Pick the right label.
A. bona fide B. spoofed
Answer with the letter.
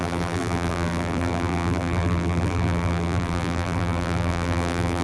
B